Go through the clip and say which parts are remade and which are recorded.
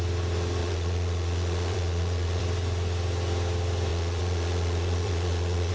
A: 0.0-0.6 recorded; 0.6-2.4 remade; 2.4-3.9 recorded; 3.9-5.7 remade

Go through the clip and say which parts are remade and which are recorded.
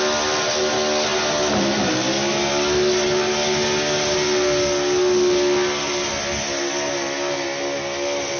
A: 0.0-8.4 recorded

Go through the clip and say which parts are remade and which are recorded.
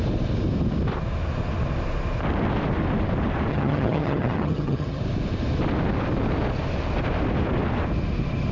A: 0.0-3.5 recorded; 3.5-5.0 remade; 5.0-8.5 recorded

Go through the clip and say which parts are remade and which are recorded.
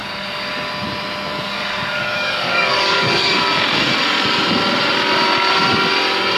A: 0.0-0.5 remade; 0.5-1.3 recorded; 1.3-3.3 remade; 3.3-6.4 recorded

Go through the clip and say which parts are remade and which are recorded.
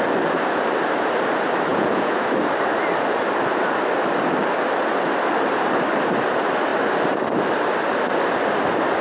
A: 0.0-1.7 recorded; 1.7-2.2 remade; 2.2-9.0 recorded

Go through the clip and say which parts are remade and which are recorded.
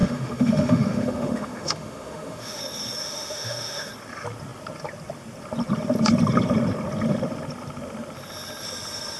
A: 0.0-2.6 remade; 2.6-3.0 recorded; 3.0-3.9 remade; 3.9-9.2 recorded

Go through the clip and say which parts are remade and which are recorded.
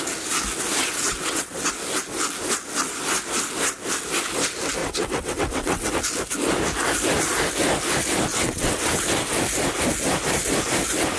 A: 0.0-0.8 recorded; 0.8-1.7 remade; 1.7-4.8 recorded; 4.8-5.9 remade; 5.9-8.3 recorded; 8.3-8.9 remade; 8.9-11.2 recorded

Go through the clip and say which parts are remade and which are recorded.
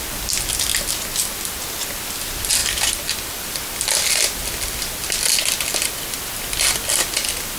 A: 0.0-7.6 recorded